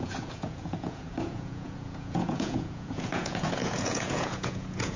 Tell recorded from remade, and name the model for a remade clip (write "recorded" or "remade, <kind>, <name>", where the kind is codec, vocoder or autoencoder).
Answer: remade, vocoder, Vocos